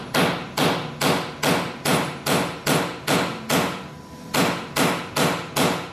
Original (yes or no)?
yes